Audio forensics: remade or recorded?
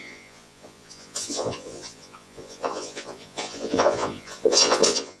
remade